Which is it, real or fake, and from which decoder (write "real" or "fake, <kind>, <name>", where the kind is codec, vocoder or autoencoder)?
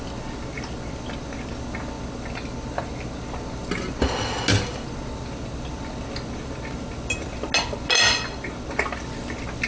real